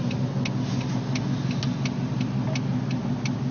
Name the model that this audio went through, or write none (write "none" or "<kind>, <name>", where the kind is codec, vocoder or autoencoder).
none